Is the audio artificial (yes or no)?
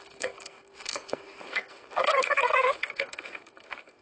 yes